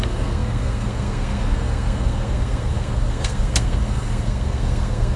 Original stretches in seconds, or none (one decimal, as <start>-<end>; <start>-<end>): none